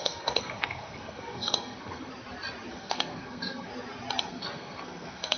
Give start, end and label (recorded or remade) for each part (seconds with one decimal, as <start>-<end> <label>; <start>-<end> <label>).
0.0-2.1 remade; 2.1-2.7 recorded; 2.7-3.7 remade; 3.7-4.2 recorded; 4.2-5.4 remade